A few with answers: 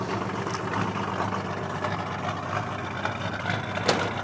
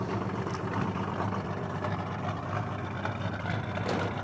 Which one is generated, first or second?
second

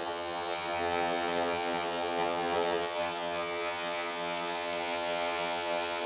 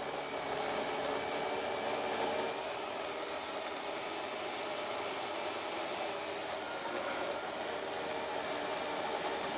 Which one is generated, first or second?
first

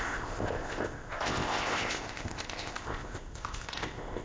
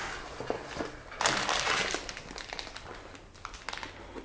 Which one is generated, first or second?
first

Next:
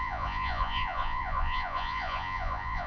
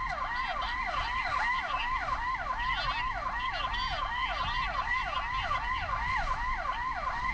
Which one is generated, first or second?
first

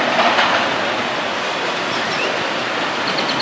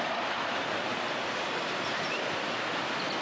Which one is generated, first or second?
second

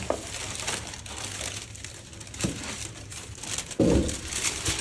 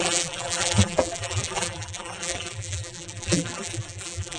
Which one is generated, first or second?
second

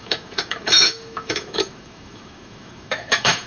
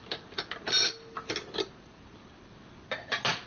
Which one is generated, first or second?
first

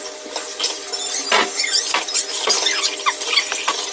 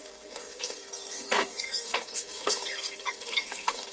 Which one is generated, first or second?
second